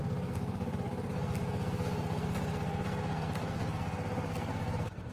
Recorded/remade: remade